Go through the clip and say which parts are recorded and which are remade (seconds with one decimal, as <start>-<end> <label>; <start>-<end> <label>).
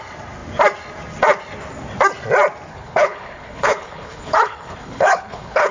0.0-2.7 recorded; 2.7-5.7 remade